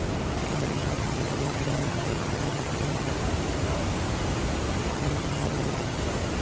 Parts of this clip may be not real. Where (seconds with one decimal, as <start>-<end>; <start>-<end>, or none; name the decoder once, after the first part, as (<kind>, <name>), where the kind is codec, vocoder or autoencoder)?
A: 0.4-3.1 (vocoder, HiFi-GAN); 4.9-6.0